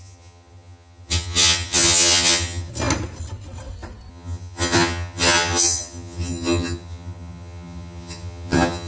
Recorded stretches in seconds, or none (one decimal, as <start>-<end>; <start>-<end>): 2.7-4.1